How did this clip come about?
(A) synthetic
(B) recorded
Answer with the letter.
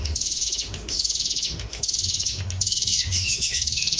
A